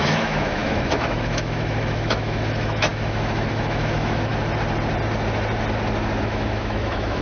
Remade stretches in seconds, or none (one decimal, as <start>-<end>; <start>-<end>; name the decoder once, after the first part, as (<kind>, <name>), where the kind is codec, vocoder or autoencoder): 0.0-4.3 (autoencoder, DAC-VAE); 6.2-7.2